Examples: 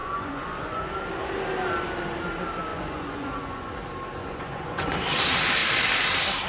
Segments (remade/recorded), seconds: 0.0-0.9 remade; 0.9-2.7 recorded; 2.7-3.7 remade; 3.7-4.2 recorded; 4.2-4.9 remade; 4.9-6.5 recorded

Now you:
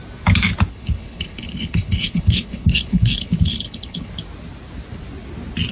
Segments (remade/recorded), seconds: 0.0-0.7 recorded; 0.7-4.1 remade; 4.1-5.7 recorded

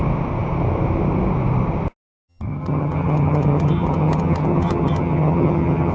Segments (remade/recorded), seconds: 0.0-2.3 recorded; 2.3-5.9 remade

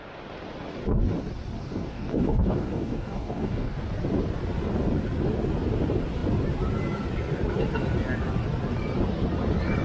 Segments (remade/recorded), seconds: 0.0-1.6 recorded; 1.6-3.8 remade; 3.8-9.8 recorded

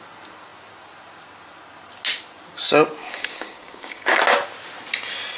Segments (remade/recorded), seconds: 0.0-3.0 recorded; 3.0-4.2 remade; 4.2-5.4 recorded